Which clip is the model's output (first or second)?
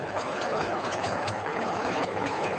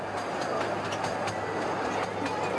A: first